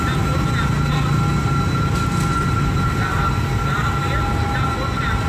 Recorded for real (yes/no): yes